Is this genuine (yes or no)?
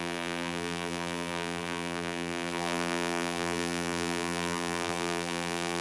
no